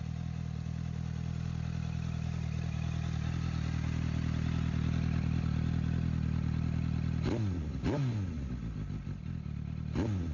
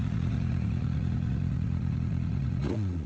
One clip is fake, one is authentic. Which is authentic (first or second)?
first